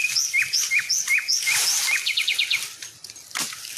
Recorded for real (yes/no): yes